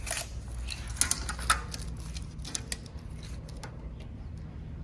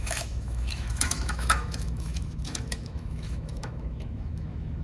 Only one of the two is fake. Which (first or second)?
second